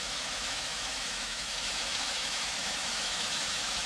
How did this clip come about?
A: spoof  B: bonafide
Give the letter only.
A